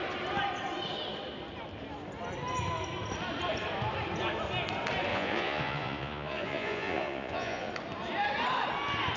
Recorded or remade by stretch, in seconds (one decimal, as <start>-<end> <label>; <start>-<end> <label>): 0.0-5.1 recorded; 5.1-7.7 remade; 7.7-9.2 recorded